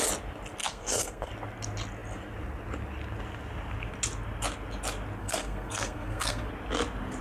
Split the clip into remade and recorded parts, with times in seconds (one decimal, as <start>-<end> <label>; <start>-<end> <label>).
0.0-0.6 recorded; 0.6-1.3 remade; 1.3-5.2 recorded; 5.2-6.5 remade; 6.5-7.2 recorded

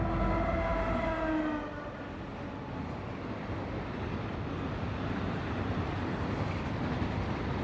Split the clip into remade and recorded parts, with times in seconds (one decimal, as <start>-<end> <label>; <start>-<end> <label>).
0.0-7.6 recorded

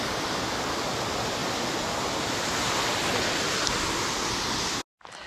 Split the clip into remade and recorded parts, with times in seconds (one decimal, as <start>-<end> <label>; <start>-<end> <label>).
0.0-5.3 recorded